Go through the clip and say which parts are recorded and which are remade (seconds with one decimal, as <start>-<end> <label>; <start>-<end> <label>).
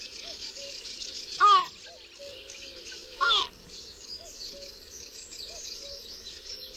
0.0-1.6 remade; 1.6-2.2 recorded; 2.2-6.8 remade